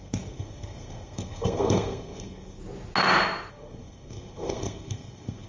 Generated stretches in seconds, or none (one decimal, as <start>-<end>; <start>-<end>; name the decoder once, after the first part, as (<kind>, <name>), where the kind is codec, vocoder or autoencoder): 0.0-2.6 (codec, SNAC); 3.5-5.5